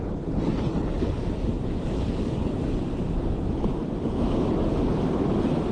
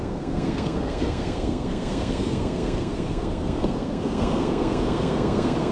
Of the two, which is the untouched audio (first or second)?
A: first